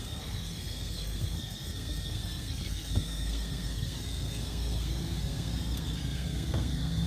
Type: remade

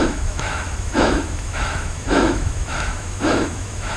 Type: remade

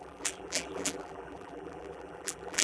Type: remade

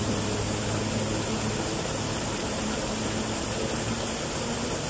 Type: recorded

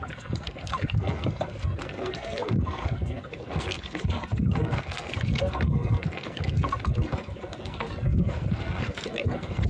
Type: remade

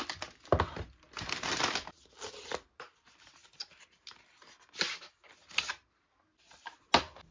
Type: recorded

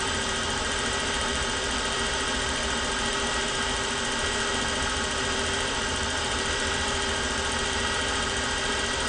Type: remade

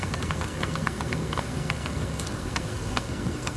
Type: remade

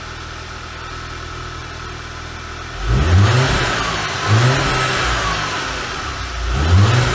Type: recorded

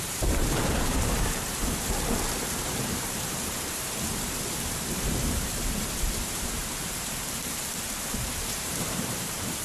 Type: remade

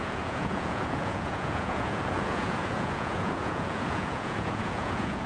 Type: remade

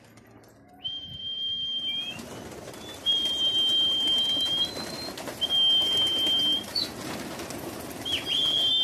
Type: recorded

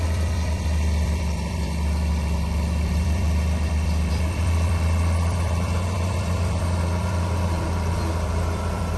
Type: remade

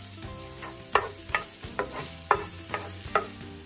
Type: recorded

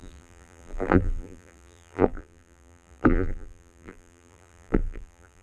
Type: remade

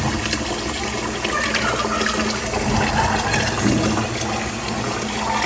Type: recorded